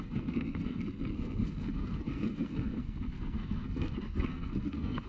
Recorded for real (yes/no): no